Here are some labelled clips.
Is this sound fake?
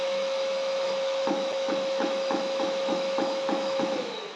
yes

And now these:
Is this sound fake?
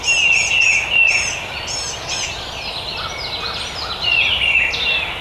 no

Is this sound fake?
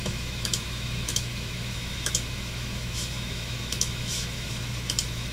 yes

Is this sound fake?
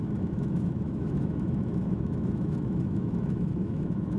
yes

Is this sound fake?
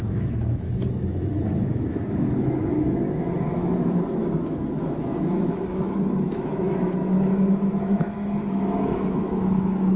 yes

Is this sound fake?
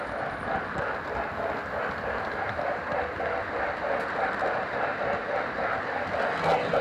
no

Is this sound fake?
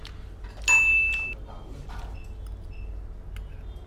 no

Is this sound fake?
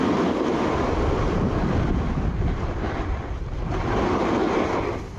no